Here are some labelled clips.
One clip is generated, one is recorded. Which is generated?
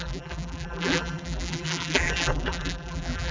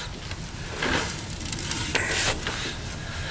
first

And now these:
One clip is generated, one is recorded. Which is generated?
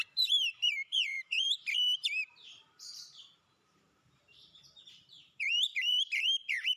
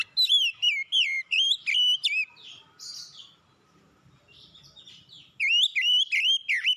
first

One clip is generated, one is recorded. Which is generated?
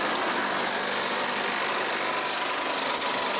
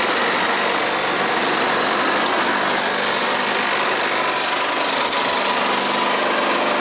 first